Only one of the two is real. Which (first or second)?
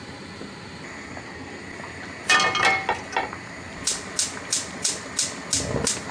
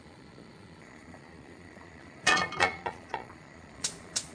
first